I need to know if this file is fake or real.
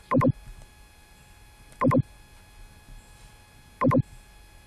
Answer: real